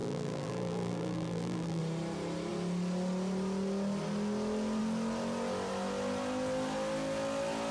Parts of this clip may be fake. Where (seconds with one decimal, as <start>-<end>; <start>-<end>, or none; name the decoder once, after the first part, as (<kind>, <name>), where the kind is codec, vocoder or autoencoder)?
0.0-1.8 (vocoder, BigVGAN v2)